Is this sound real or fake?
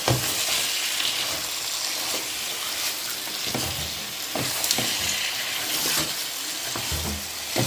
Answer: real